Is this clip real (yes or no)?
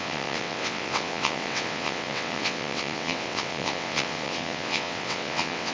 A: no